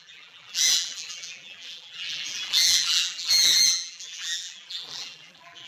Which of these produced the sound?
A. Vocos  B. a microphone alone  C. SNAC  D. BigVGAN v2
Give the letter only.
D